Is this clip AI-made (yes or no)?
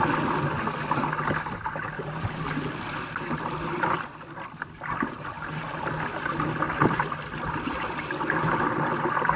no